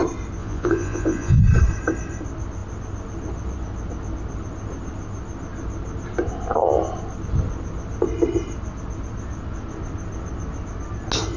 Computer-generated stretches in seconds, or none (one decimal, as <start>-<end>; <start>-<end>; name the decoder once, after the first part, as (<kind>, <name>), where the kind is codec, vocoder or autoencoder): 0.4-1.4 (vocoder, Vocos)